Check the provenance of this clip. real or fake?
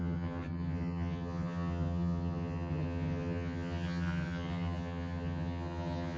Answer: fake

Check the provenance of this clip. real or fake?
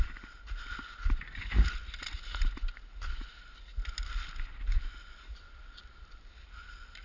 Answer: real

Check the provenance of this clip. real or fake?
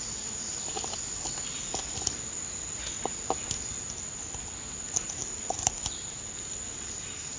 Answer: real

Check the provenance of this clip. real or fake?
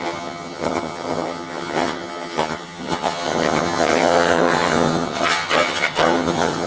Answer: fake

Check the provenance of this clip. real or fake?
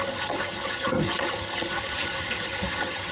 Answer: fake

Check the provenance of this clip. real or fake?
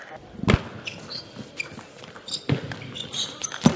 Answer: real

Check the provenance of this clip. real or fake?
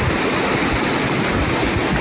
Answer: real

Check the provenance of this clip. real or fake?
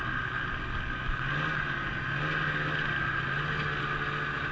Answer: real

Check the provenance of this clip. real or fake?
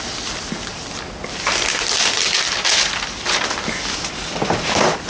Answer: real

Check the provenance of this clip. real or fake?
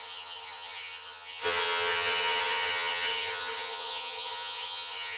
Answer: fake